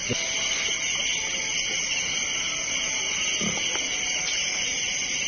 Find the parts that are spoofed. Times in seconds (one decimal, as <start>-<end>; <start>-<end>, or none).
none

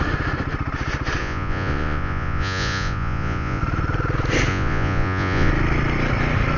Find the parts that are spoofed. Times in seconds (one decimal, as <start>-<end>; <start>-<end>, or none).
1.2-3.6; 4.5-5.5

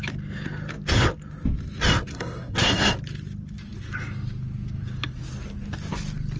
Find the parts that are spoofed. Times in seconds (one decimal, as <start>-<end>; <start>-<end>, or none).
2.1-2.9

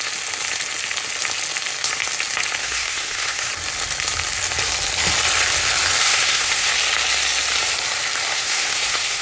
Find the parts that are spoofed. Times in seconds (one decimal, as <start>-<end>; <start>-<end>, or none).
2.6-3.5; 6.0-6.7; 8.3-9.2